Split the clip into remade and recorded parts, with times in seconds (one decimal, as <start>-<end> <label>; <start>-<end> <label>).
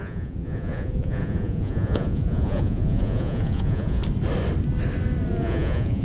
0.0-4.0 remade; 4.0-5.3 recorded; 5.3-6.0 remade